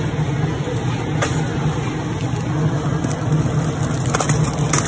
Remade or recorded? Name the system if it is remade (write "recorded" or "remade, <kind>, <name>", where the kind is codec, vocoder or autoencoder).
recorded